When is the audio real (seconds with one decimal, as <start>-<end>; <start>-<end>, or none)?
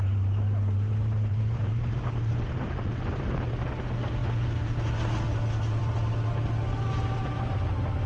0.0-1.3; 2.3-8.1